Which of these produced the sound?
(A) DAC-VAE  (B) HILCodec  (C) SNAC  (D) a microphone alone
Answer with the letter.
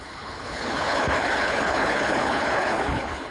B